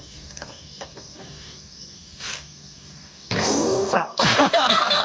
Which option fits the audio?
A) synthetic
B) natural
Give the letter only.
A